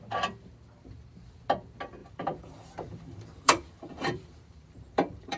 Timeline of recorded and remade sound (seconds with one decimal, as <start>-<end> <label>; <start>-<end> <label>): 0.0-2.0 recorded; 2.0-5.4 remade